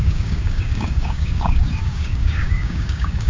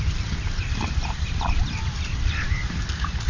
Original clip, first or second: second